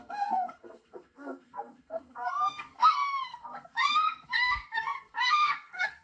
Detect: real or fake fake